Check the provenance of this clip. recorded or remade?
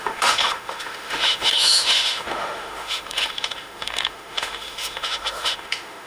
remade